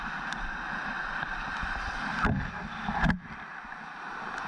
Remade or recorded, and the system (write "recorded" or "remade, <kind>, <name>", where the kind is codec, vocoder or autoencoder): recorded